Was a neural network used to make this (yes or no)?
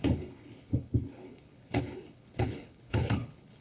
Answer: yes